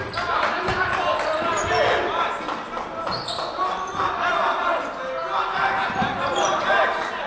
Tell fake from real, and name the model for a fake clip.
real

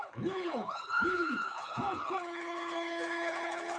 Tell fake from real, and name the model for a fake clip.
fake, codec, HILCodec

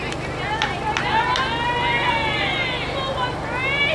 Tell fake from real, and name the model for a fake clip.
real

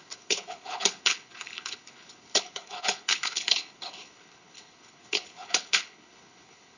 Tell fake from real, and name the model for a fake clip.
fake, codec, HILCodec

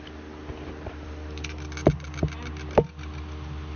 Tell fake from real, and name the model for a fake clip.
real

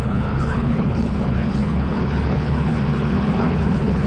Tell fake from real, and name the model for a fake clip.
fake, codec, HILCodec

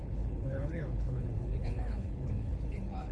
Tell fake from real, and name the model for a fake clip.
fake, codec, HILCodec